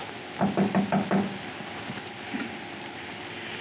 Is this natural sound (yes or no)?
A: yes